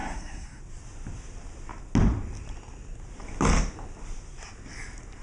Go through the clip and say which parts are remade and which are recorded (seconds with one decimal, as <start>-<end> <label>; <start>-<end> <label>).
0.0-0.6 remade; 0.6-5.2 recorded